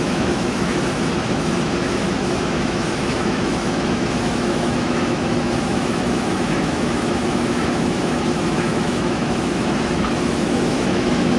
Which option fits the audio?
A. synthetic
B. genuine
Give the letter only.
A